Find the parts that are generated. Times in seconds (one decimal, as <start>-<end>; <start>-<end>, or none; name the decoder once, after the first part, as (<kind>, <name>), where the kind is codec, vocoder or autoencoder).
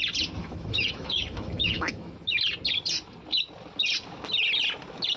0.4-2.3 (autoencoder, DAC-VAE)